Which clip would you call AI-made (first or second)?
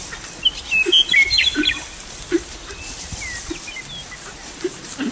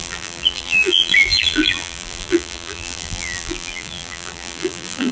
second